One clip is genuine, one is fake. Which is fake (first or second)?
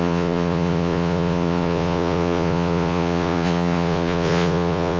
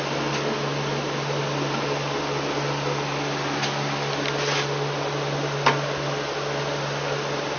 first